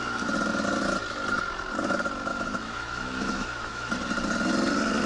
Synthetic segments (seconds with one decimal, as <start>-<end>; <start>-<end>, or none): 2.3-3.9